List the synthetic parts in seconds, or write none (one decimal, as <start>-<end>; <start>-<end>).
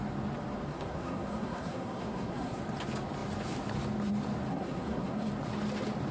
0.7-2.6; 4.5-5.3